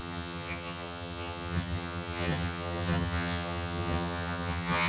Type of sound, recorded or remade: remade